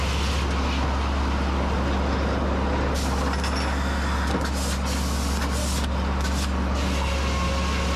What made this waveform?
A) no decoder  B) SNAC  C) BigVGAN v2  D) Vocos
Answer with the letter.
A